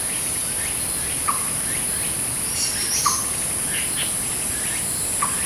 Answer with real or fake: real